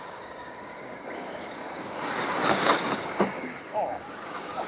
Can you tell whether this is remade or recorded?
remade